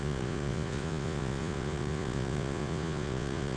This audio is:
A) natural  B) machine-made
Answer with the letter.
B